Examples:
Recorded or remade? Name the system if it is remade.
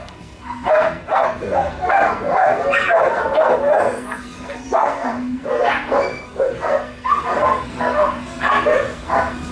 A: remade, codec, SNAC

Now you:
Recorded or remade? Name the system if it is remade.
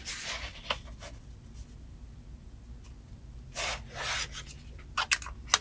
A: recorded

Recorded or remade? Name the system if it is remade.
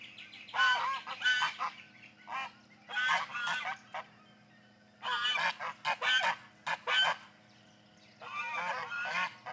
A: recorded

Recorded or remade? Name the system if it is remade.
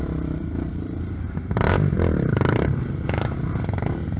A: remade, vocoder, BigVGAN v2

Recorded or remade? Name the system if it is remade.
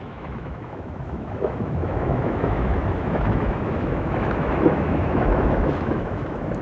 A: remade, autoencoder, DAC-VAE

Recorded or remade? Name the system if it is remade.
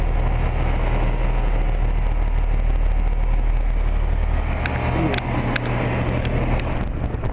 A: recorded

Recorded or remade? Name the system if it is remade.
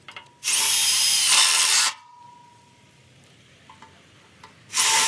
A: remade, vocoder, BigVGAN v2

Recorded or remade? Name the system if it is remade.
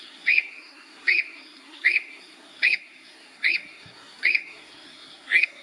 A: remade, codec, SNAC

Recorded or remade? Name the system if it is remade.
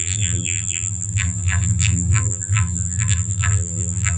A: remade, vocoder, BigVGAN v2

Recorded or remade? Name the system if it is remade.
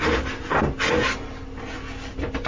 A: recorded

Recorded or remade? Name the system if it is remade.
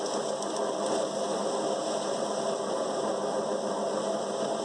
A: recorded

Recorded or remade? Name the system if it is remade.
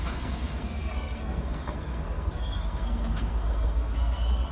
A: remade, codec, SNAC